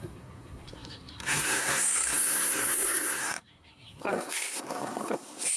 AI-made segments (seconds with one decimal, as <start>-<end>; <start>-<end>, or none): 0.0-5.6